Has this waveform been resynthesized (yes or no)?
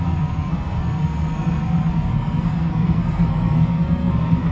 yes